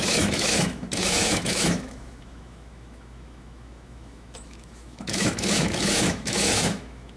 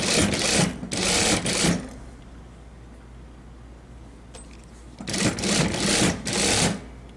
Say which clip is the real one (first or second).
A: second